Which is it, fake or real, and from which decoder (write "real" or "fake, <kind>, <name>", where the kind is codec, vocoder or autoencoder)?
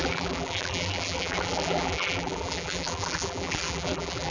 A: fake, vocoder, BigVGAN v2